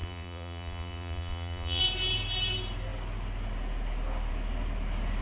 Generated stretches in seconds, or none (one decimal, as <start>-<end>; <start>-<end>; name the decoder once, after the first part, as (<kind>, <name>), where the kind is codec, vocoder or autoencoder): 0.0-1.8 (vocoder, Vocos)

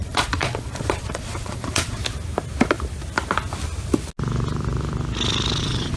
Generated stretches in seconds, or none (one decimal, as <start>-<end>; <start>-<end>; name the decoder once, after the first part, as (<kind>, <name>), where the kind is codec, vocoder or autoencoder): 0.0-2.0 (vocoder, Vocos); 5.6-6.0

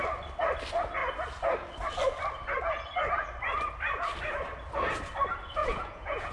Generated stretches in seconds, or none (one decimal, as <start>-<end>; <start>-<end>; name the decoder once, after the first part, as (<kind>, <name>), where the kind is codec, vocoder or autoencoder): 5.6-6.3 (vocoder, Vocos)

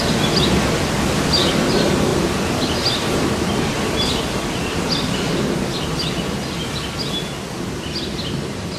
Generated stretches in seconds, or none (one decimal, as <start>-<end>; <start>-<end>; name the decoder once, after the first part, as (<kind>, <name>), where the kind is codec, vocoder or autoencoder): none